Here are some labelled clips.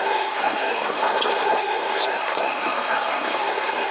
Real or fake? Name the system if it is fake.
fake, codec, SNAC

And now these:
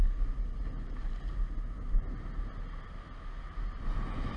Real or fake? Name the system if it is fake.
real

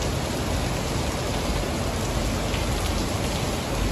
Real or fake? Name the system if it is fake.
real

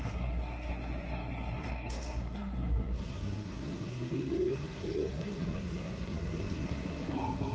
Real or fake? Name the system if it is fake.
fake, codec, SNAC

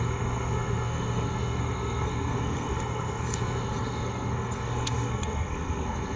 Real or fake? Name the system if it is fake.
fake, codec, SNAC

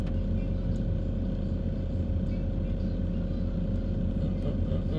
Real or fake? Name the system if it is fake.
real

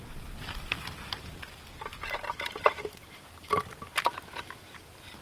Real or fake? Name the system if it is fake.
real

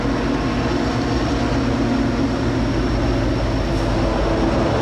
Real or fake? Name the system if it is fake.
real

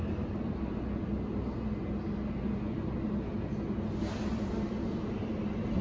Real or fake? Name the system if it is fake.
real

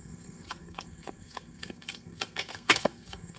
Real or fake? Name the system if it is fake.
fake, codec, SNAC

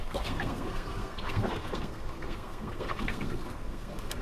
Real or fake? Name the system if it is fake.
fake, codec, SNAC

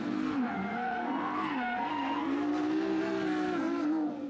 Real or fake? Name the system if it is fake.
fake, codec, SNAC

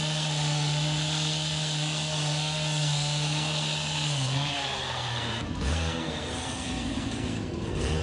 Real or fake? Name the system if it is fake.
fake, codec, SNAC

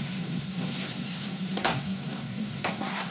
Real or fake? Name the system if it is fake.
fake, codec, SNAC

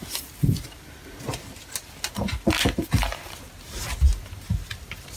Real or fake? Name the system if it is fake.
real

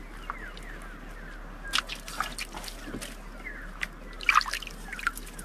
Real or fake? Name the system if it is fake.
real